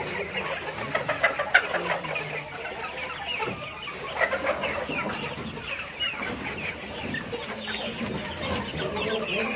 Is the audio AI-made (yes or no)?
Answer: no